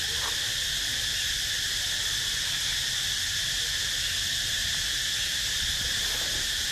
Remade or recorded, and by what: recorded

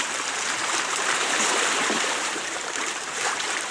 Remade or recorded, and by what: remade, vocoder, BigVGAN v2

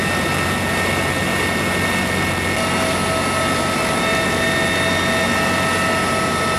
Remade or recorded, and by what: recorded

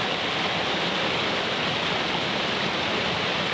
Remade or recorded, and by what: recorded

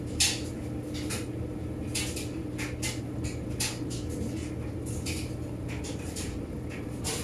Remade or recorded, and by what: recorded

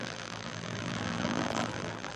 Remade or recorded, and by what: remade, vocoder, BigVGAN v2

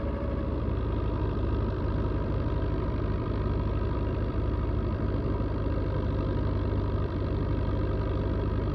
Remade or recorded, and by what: remade, vocoder, BigVGAN v2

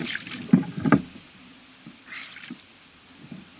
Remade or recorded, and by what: remade, vocoder, BigVGAN v2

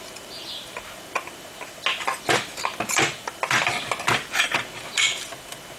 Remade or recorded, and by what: recorded